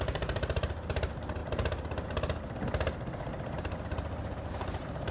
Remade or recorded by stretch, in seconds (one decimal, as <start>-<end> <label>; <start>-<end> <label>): 0.0-1.4 remade; 1.4-4.5 recorded; 4.5-5.1 remade